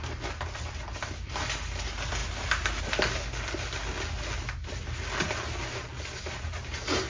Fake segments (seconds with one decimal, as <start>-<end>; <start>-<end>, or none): none